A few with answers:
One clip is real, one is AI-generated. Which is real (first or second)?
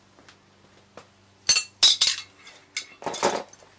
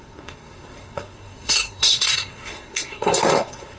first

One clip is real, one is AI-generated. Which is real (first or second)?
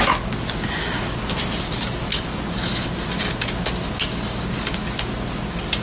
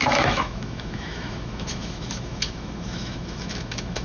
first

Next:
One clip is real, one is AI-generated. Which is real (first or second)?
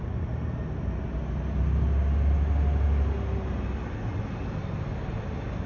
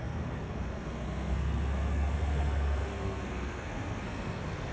first